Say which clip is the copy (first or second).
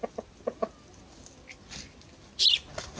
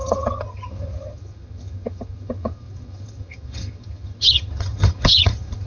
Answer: second